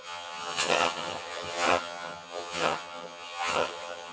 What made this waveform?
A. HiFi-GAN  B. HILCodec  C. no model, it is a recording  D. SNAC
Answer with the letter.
A